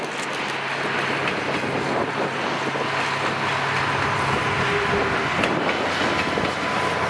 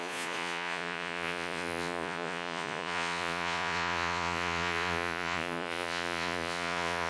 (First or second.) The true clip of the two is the first